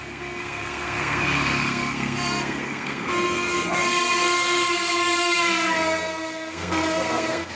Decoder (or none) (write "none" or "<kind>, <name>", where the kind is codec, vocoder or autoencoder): codec, SNAC